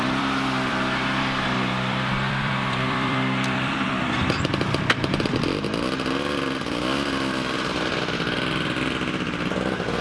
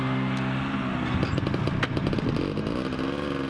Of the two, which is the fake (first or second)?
first